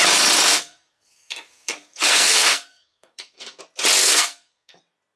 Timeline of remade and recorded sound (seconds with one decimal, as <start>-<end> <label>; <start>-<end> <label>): 0.0-0.5 recorded; 0.5-3.6 remade; 3.6-4.0 recorded; 4.0-4.8 remade; 4.8-5.2 recorded